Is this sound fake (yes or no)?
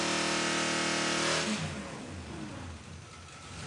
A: no